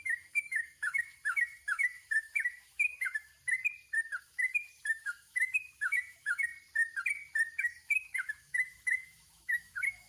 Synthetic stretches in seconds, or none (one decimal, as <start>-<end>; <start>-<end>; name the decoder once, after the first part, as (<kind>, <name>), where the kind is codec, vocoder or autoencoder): 0.0-3.3 (autoencoder, DAC-VAE); 4.2-6.5; 7.6-10.1